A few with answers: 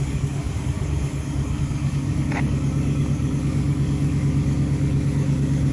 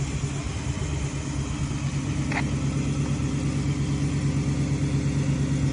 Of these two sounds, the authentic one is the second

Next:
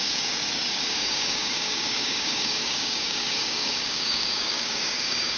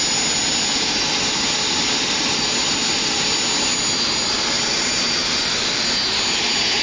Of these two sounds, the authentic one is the second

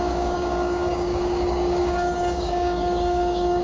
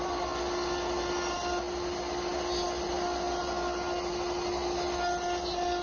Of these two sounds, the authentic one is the second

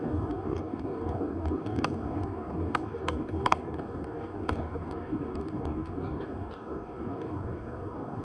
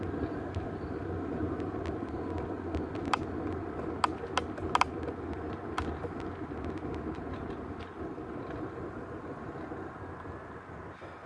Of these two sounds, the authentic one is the second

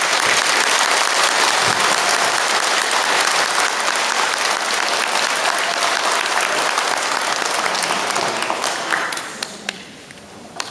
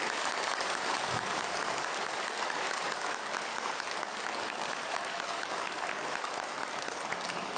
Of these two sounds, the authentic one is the first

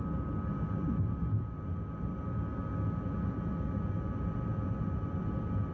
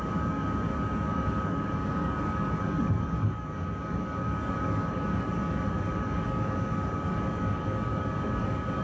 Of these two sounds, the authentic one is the first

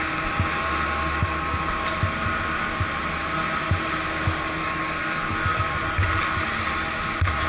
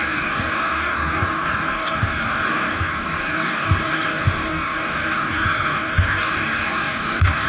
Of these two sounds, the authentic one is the first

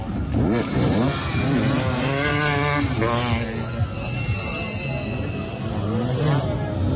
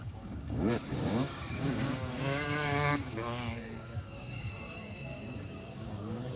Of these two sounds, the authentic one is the first